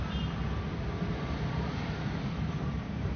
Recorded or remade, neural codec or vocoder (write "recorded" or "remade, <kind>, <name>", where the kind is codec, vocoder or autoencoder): remade, vocoder, BigVGAN v2